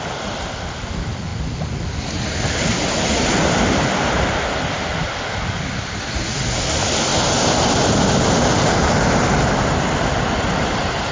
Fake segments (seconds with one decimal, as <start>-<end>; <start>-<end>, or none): none